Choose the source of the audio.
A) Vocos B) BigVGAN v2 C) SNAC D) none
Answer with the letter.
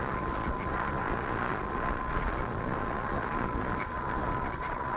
A